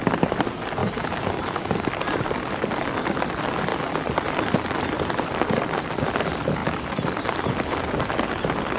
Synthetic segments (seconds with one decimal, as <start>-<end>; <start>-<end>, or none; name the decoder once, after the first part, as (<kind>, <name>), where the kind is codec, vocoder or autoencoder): 0.0-0.8 (vocoder, BigVGAN v2); 1.3-3.7; 4.3-8.8